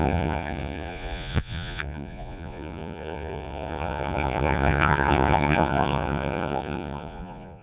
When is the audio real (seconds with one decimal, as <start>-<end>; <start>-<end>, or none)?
none